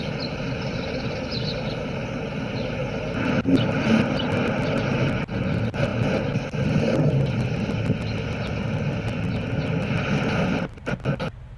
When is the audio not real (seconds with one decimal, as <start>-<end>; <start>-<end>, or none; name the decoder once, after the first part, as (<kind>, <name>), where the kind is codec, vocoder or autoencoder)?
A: none

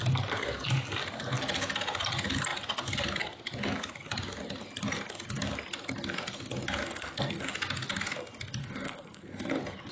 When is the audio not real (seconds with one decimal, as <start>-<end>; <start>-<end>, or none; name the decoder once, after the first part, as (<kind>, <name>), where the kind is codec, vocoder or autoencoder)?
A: 6.8-7.5 (codec, SNAC); 8.6-9.5